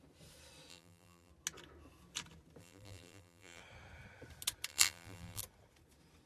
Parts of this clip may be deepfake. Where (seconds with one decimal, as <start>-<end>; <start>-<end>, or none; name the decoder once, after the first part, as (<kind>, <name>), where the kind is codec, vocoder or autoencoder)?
0.7-1.3 (vocoder, BigVGAN v2); 2.6-3.6; 4.7-5.4